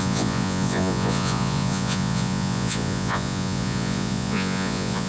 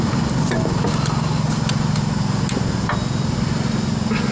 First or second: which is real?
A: second